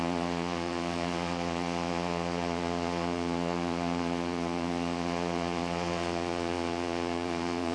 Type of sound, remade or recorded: remade